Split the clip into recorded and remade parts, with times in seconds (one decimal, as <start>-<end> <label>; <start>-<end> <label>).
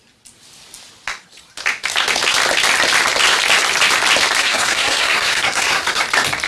0.0-4.4 recorded; 4.4-6.0 remade; 6.0-6.5 recorded